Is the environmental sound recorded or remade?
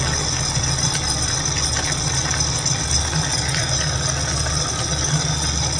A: recorded